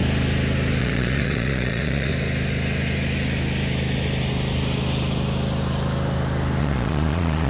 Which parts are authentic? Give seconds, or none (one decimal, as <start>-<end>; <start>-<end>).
0.0-0.8; 2.1-6.6